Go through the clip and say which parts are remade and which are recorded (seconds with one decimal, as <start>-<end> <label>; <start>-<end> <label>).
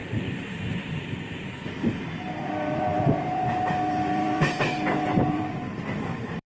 0.0-6.6 remade